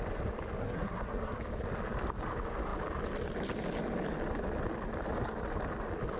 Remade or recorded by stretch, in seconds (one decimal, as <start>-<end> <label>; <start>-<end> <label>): 0.0-0.6 recorded; 0.6-1.4 remade; 1.4-6.2 recorded